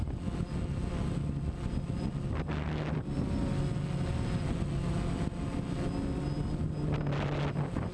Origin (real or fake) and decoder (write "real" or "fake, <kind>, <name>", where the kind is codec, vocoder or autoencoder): real